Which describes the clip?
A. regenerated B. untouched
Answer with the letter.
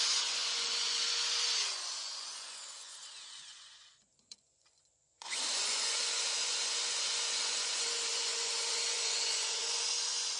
A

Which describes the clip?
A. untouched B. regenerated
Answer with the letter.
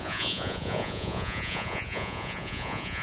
B